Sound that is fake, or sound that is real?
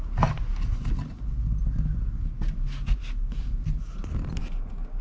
real